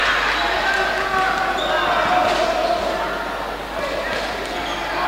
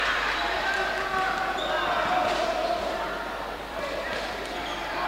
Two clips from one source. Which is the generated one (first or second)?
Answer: second